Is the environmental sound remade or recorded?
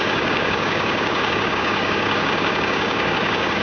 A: remade